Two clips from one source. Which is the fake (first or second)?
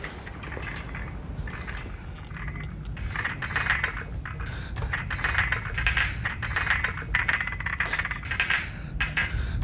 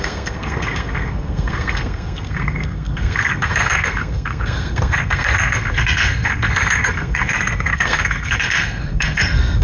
second